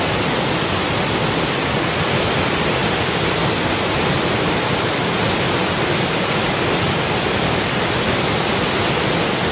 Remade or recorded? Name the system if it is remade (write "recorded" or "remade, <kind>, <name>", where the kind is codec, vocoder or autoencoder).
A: recorded